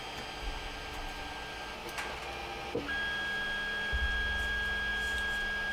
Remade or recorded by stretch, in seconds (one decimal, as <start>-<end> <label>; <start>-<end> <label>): 0.0-5.7 recorded